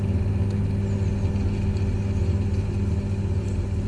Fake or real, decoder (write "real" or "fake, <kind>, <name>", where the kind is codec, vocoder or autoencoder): real